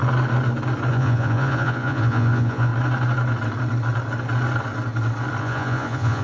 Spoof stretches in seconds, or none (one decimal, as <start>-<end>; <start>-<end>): 0.9-2.7; 5.4-6.2